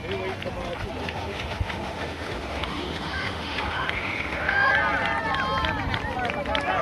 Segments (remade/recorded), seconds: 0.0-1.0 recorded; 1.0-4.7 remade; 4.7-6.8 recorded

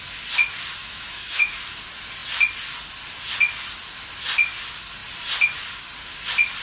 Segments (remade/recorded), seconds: 0.0-0.8 recorded; 0.8-1.6 remade; 1.6-6.6 recorded

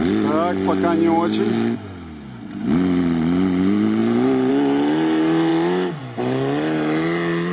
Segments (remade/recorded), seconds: 0.0-7.5 recorded